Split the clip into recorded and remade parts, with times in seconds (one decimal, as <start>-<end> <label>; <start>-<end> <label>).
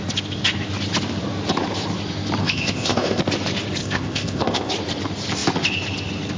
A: 0.0-2.4 recorded; 2.4-3.2 remade; 3.2-3.8 recorded; 3.8-4.7 remade; 4.7-6.4 recorded